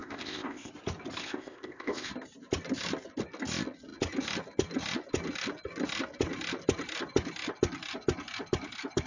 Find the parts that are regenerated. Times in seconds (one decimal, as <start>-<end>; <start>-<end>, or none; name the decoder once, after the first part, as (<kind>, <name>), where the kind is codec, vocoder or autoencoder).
0.0-0.7 (codec, ZipCodec); 1.2-2.1